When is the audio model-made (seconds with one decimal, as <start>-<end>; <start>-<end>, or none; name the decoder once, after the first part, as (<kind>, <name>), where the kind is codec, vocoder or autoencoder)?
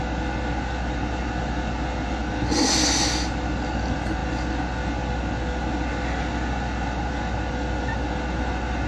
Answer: none